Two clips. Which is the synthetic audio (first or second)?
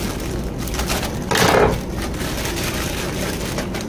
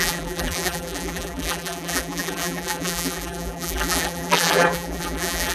second